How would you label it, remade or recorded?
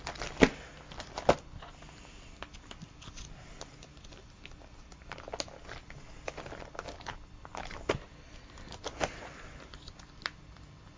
recorded